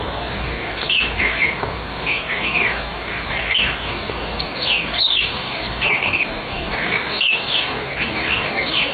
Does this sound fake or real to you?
fake